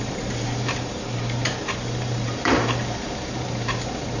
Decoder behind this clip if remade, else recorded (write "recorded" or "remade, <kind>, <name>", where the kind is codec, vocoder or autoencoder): remade, vocoder, BigVGAN v2